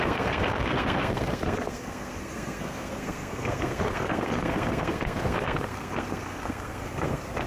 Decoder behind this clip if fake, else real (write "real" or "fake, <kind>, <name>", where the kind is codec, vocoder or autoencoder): fake, codec, SNAC